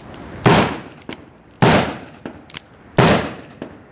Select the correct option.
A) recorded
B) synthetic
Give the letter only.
A